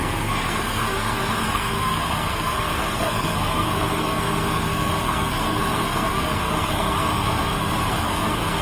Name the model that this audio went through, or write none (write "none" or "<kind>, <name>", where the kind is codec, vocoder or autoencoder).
codec, SNAC